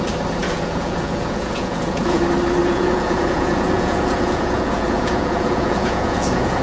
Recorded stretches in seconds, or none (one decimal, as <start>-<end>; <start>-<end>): 0.0-0.4; 2.2-2.6